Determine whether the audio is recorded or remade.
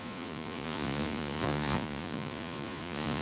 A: remade